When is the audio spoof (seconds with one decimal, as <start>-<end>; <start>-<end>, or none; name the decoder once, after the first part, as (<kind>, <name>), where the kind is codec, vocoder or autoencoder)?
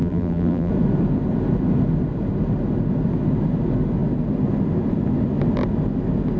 0.0-0.7 (vocoder, BigVGAN v2)